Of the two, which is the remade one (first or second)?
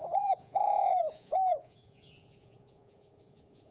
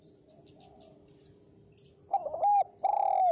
first